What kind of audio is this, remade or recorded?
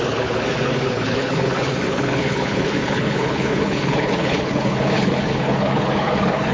remade